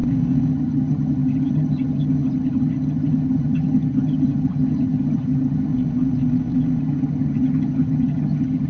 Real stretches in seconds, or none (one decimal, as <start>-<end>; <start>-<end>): 0.0-0.5; 5.7-6.8